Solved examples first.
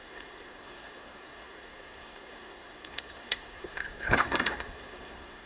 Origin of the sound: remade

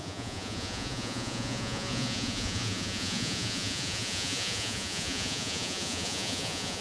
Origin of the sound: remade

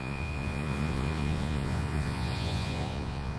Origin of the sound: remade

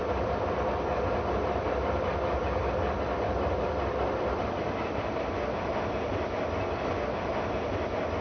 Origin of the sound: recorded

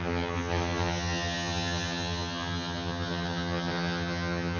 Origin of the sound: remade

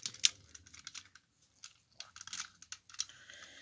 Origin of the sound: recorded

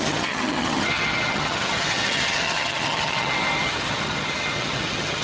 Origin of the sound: remade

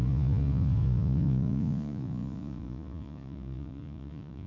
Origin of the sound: remade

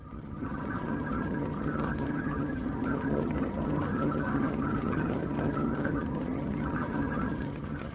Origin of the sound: remade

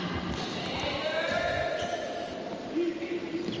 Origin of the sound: recorded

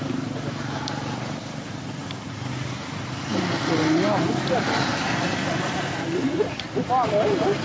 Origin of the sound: recorded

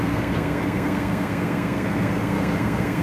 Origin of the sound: remade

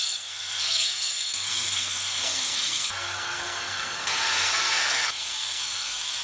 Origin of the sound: remade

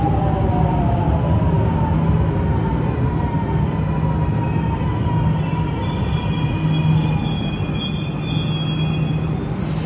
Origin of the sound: recorded